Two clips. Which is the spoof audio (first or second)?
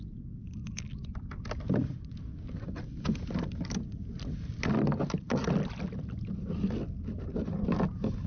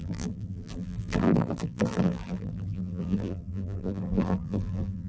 second